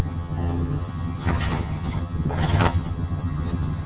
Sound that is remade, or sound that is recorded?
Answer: remade